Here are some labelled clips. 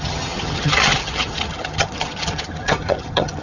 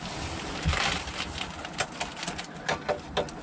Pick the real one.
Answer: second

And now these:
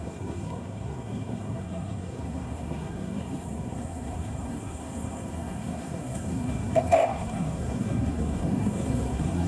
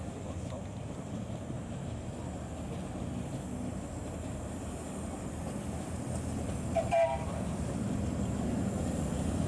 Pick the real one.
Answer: second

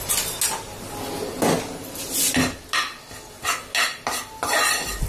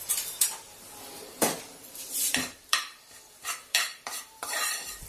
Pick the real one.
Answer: first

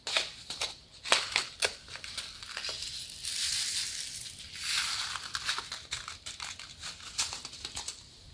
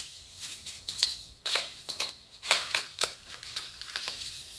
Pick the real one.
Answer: first